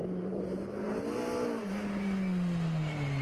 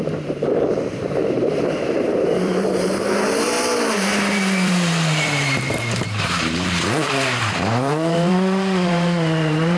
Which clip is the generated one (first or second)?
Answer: second